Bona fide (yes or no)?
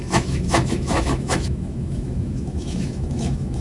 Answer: no